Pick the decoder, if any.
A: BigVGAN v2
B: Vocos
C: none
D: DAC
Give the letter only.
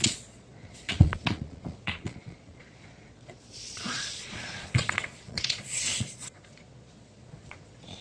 B